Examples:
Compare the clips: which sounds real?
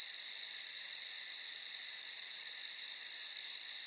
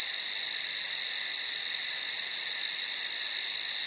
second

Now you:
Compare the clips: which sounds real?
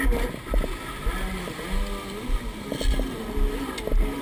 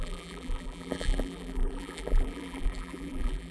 first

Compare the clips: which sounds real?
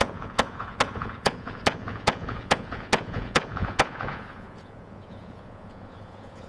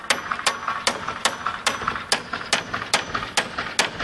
second